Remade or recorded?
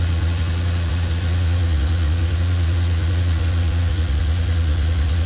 remade